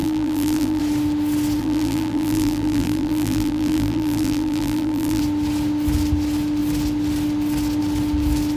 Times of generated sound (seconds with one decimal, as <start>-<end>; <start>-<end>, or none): 0.0-0.8; 1.6-5.2